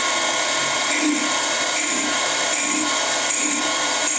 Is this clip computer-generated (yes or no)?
yes